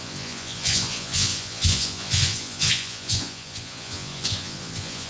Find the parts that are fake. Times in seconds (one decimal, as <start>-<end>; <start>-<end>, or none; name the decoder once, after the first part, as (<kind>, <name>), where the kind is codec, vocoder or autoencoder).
0.0-5.1 (vocoder, Vocos)